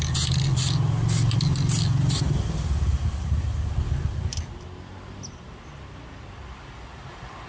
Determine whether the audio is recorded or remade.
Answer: recorded